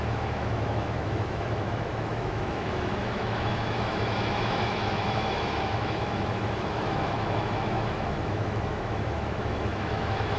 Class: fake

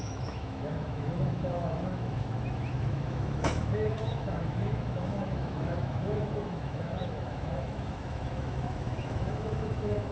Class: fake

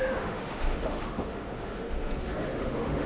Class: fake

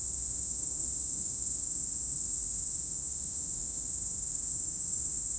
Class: fake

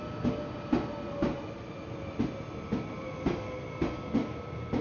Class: real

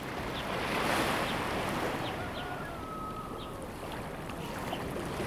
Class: real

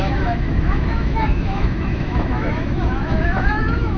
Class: fake